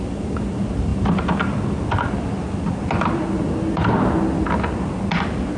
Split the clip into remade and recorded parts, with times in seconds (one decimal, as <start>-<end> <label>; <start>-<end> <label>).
0.0-5.6 recorded